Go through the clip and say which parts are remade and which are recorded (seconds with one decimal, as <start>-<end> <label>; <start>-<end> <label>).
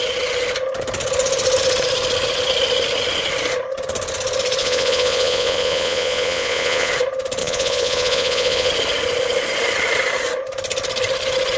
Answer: 0.0-4.6 recorded; 4.6-6.9 remade; 6.9-7.4 recorded; 7.4-8.7 remade; 8.7-11.6 recorded